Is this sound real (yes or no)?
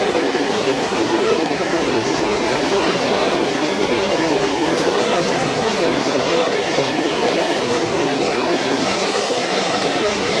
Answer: no